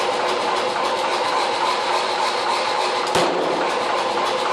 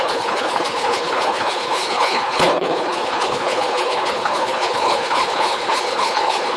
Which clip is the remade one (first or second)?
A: second